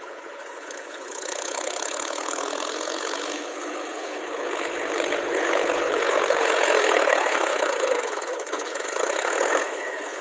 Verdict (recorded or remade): remade